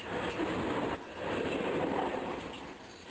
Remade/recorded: recorded